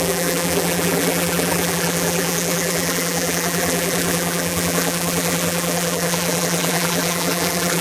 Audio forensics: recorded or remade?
remade